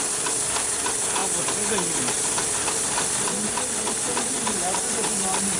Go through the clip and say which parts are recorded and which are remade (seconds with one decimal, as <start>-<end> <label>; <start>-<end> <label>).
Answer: 0.0-5.6 recorded